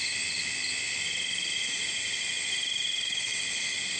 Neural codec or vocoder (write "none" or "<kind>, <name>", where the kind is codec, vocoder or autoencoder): none